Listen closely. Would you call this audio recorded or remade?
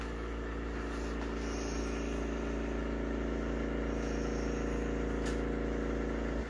recorded